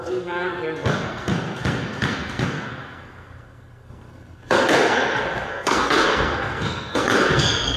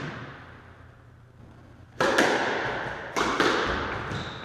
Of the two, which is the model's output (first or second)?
first